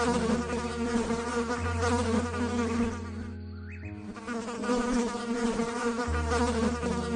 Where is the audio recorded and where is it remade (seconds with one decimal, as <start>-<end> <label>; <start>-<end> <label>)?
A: 0.0-7.2 recorded